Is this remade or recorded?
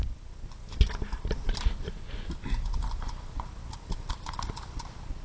recorded